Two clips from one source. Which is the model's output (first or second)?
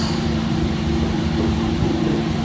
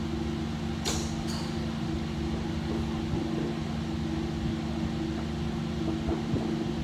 first